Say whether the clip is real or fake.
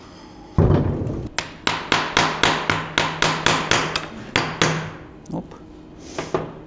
real